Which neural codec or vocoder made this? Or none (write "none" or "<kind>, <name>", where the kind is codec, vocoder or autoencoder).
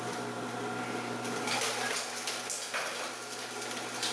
none